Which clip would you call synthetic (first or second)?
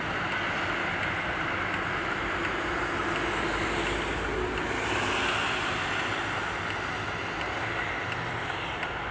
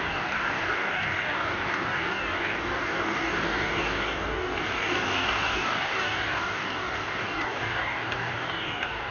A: second